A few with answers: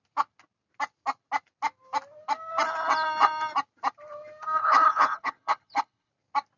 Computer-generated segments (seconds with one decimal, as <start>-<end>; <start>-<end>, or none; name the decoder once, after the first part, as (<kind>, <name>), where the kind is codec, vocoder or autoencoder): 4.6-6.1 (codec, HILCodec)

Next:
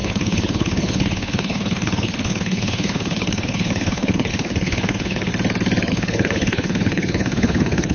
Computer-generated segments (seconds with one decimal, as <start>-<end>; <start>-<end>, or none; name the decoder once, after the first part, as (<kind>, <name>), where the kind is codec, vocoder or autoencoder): 0.0-5.3 (codec, HILCodec); 5.9-7.9

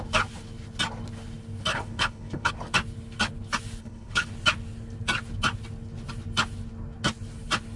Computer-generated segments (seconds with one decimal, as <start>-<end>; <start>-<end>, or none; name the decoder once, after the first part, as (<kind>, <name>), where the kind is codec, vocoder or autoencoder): 1.7-2.5 (codec, HILCodec); 3.8-4.3